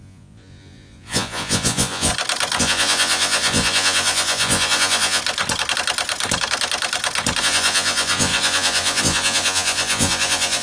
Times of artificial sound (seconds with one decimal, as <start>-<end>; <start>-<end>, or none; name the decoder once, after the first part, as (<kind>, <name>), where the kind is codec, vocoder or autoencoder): 0.0-2.1 (vocoder, Vocos); 2.6-5.2; 7.4-10.6